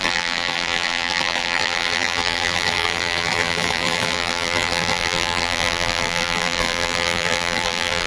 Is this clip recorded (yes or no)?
no